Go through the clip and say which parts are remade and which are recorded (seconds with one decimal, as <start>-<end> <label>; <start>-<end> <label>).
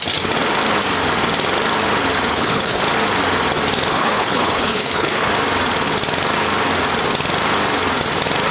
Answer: 0.0-2.3 recorded; 2.3-2.8 remade; 2.8-3.9 recorded; 3.9-5.3 remade; 5.3-8.5 recorded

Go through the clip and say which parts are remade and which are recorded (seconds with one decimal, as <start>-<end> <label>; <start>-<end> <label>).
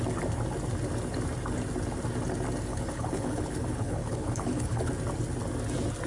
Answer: 0.0-2.7 recorded; 2.7-4.9 remade; 4.9-6.1 recorded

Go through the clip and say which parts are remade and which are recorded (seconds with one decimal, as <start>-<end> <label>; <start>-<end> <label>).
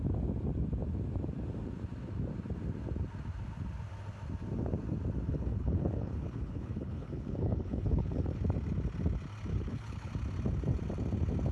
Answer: 0.0-5.3 recorded; 5.3-8.4 remade; 8.4-9.5 recorded; 9.5-10.1 remade; 10.1-11.5 recorded